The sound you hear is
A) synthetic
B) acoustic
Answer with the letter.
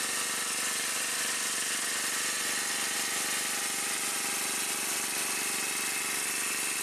B